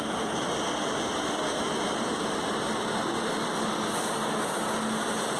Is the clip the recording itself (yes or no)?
yes